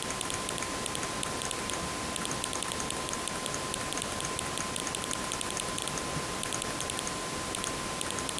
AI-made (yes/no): no